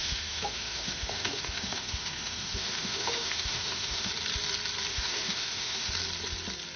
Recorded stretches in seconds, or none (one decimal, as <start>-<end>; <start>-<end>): 4.1-4.9; 5.9-6.8